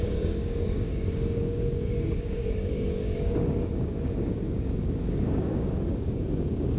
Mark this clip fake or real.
fake